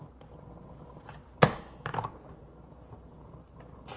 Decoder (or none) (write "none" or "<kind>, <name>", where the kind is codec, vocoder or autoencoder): none